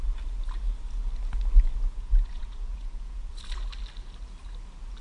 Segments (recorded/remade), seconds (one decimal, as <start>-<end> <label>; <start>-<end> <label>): 0.0-1.9 recorded; 1.9-3.3 remade; 3.3-5.0 recorded